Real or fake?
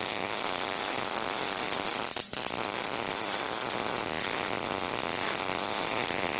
real